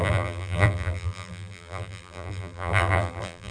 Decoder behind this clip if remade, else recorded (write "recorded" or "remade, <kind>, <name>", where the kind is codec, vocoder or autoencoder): remade, vocoder, BigVGAN v2